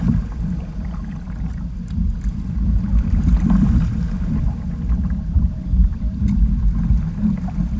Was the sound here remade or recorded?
remade